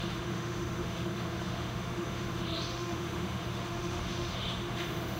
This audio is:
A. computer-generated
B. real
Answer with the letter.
A